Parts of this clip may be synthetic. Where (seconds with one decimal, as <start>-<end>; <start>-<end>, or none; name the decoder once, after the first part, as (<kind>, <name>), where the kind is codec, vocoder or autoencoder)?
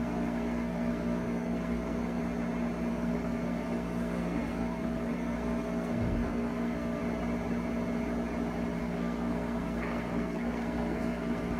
0.0-2.2 (codec, SNAC); 2.9-7.0; 8.8-11.6